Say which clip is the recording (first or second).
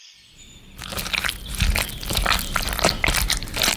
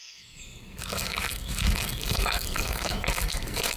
first